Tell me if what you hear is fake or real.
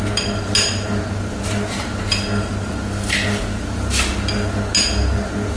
real